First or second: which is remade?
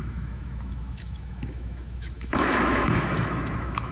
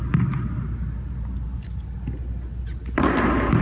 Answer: first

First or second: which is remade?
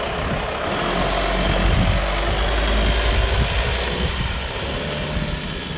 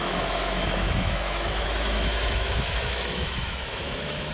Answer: second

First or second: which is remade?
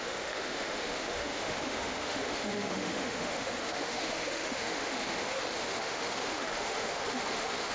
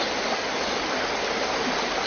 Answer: first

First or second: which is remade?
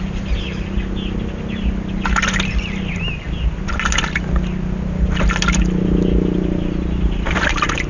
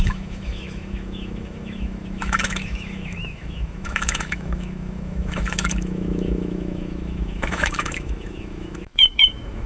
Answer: second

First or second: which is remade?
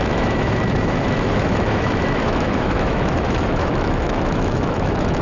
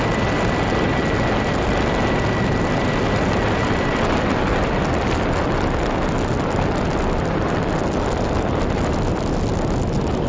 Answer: first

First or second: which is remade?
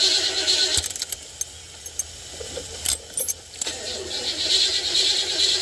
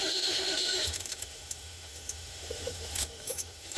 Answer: second